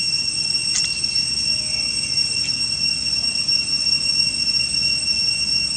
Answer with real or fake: real